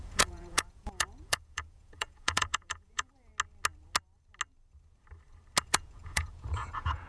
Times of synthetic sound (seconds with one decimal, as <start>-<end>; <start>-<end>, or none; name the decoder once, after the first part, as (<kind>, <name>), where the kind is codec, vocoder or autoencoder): 0.0-3.3 (vocoder, Vocos); 5.6-7.1